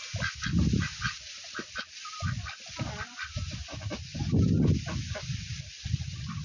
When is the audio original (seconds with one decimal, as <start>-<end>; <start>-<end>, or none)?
0.0-6.4